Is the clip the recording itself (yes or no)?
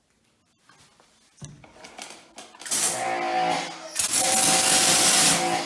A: yes